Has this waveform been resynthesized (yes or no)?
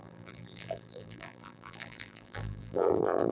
yes